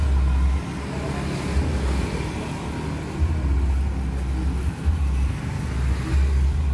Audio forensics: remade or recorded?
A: recorded